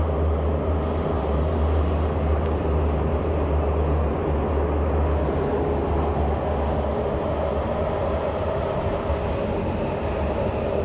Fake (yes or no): no